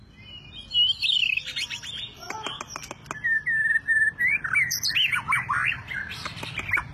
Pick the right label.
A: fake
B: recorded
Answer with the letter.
B